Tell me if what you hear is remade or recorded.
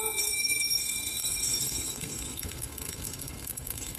remade